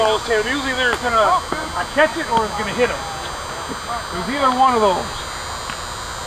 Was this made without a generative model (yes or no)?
yes